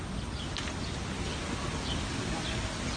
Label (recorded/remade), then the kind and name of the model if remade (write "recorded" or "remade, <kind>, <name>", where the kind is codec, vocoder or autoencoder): recorded